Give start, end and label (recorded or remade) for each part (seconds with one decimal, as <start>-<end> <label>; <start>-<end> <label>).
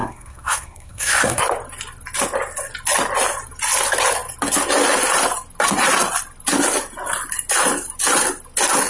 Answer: 0.0-1.4 remade; 1.4-8.9 recorded